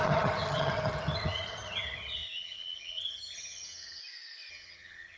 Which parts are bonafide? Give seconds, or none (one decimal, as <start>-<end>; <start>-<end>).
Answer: 4.0-4.5